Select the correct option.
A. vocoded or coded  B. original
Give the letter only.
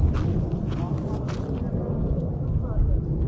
B